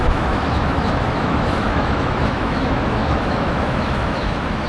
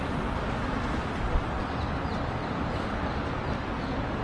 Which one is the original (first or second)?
second